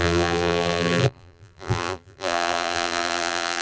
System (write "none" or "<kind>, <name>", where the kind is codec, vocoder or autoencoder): vocoder, BigVGAN v2